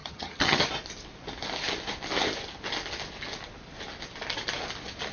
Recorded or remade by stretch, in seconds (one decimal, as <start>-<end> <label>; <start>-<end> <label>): 0.0-0.6 remade; 0.6-5.1 recorded